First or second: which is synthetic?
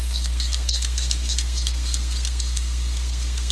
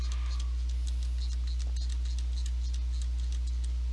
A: first